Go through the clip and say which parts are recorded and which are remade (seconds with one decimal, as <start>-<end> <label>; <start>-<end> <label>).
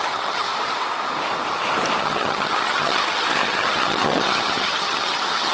0.0-0.5 remade; 0.5-2.0 recorded; 2.0-5.5 remade